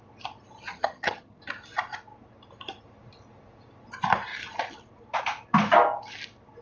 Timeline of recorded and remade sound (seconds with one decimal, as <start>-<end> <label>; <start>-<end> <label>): 0.0-0.7 recorded; 0.7-1.4 remade; 1.4-6.6 recorded